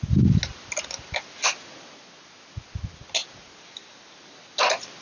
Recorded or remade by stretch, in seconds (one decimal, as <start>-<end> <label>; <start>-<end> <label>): 0.0-5.0 recorded